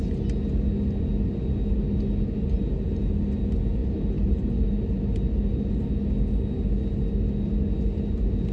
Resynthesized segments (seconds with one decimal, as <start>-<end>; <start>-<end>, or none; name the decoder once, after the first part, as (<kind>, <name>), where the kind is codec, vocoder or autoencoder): 3.8-5.9 (vocoder, BigVGAN v2)